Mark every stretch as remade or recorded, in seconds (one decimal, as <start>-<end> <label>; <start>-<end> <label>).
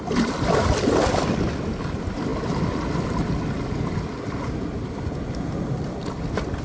0.0-6.6 recorded